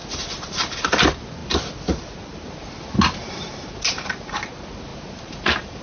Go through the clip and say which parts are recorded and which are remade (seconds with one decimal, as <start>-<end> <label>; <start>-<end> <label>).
0.0-0.8 remade; 0.8-4.9 recorded; 4.9-5.8 remade